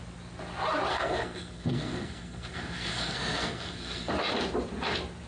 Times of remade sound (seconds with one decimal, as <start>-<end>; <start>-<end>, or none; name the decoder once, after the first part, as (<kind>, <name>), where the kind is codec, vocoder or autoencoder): 0.9-4.1 (codec, SNAC)